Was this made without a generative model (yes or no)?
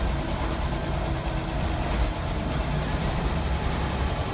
yes